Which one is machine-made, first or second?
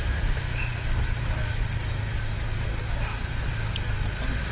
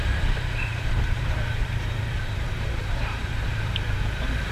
second